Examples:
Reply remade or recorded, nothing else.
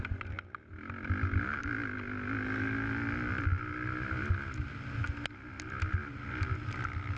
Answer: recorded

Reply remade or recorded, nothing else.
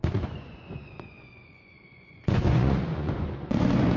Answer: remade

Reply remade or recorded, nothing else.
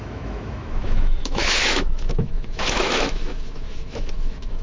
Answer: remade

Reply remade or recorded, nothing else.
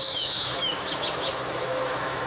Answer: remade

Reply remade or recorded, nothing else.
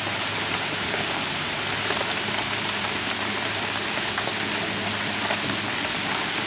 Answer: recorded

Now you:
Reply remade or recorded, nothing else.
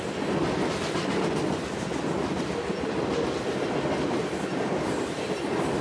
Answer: recorded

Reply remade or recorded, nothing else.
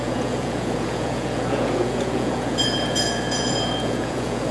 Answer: remade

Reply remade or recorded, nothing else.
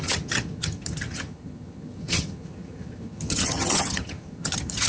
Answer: remade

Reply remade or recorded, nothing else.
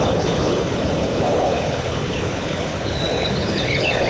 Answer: remade